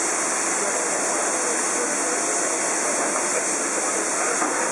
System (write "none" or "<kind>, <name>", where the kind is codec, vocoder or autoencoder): none